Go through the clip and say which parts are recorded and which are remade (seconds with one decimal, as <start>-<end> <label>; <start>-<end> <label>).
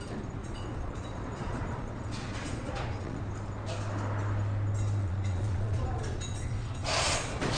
0.0-0.4 recorded; 0.4-3.2 remade; 3.2-5.0 recorded; 5.0-7.6 remade